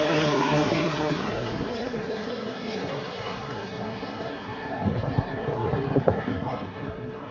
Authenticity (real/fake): fake